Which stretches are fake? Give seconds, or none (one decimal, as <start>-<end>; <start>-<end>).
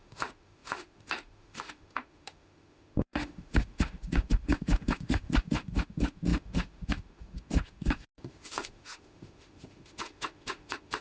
0.0-11.0